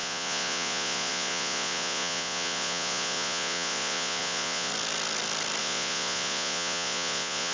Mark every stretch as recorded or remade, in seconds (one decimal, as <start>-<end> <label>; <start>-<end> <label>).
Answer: 0.0-4.7 remade; 4.7-5.6 recorded; 5.6-7.5 remade